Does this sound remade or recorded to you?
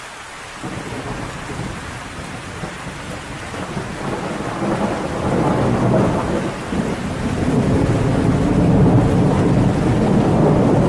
recorded